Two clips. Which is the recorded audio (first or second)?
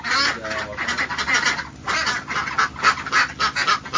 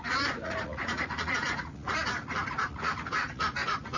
first